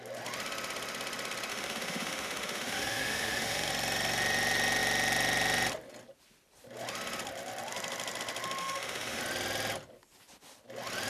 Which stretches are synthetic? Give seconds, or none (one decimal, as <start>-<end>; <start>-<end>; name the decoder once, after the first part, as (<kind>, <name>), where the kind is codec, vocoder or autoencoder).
1.5-3.7 (autoencoder, DAC-VAE); 8.6-9.2